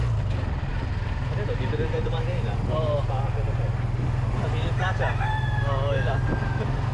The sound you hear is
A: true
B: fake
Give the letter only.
A